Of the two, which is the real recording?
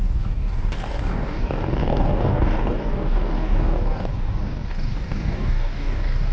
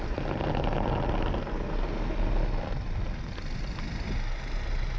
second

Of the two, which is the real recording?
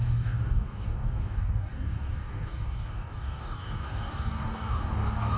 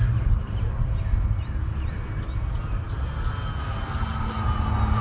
second